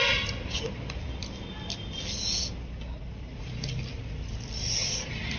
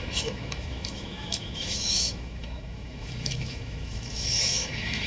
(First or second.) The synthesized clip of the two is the second